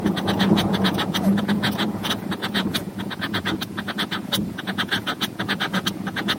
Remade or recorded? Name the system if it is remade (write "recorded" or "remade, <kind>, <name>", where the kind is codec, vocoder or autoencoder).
remade, vocoder, Vocos